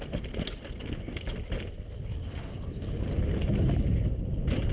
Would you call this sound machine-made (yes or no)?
no